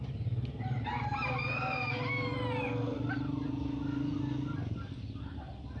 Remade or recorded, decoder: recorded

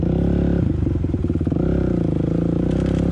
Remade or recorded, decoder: remade, vocoder, BigVGAN v2